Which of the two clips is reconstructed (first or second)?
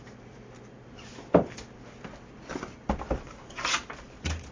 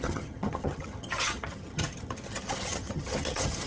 second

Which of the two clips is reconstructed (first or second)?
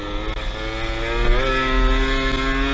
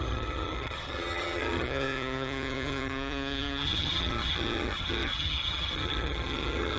second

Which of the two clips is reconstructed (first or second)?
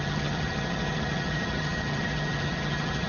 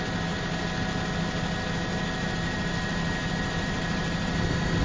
first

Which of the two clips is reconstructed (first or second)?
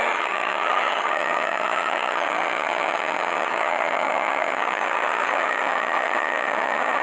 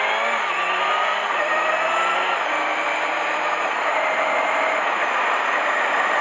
first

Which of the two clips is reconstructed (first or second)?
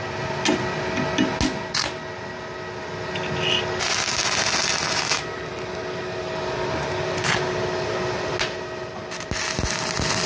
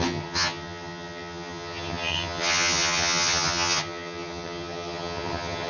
second